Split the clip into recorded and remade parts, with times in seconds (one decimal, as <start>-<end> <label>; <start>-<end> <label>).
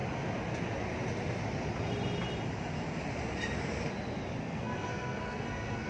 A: 0.0-4.4 recorded; 4.4-5.9 remade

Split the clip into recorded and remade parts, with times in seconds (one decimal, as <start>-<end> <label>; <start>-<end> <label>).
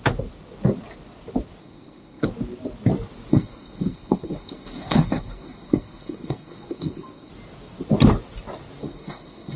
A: 0.0-1.6 recorded; 1.6-2.3 remade; 2.3-3.3 recorded; 3.3-7.3 remade; 7.3-8.8 recorded; 8.8-9.6 remade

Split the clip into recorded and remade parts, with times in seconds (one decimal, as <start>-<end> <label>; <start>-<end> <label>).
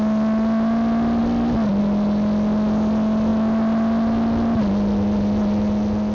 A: 0.0-6.1 recorded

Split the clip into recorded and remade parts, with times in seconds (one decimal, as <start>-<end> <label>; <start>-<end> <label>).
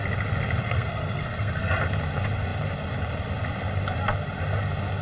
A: 0.0-0.6 recorded; 0.6-1.8 remade; 1.8-5.0 recorded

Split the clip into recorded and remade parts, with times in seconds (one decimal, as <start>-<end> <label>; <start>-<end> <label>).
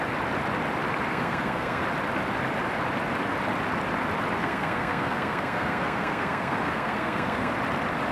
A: 0.0-1.1 recorded; 1.1-1.8 remade; 1.8-4.4 recorded; 4.4-7.5 remade; 7.5-8.1 recorded